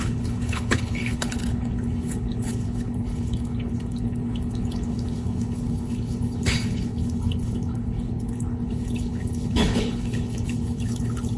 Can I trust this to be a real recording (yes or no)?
no